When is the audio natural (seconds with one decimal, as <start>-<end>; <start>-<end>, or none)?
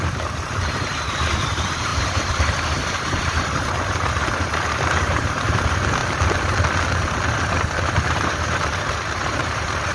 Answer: 6.0-7.9